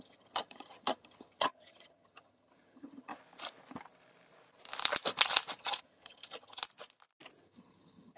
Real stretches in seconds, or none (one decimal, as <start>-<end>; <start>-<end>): 3.1-5.6; 6.6-7.4